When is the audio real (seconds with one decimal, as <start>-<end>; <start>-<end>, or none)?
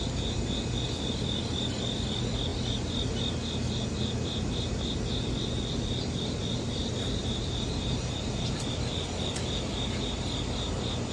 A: 0.0-7.2; 8.3-11.1